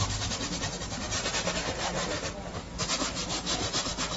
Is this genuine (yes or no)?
yes